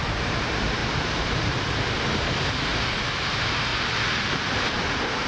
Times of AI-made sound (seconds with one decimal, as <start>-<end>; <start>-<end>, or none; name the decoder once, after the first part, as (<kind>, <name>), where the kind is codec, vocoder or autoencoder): 0.0-0.8 (vocoder, BigVGAN v2); 2.1-2.7; 3.3-3.7; 4.3-5.3